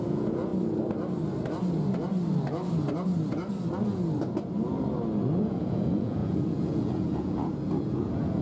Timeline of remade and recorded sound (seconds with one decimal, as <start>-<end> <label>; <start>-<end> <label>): 0.0-0.5 remade; 0.5-5.4 recorded; 5.4-8.4 remade